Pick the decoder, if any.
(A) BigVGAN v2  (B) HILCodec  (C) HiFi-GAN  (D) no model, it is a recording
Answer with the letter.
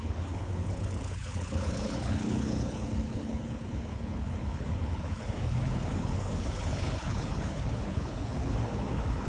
B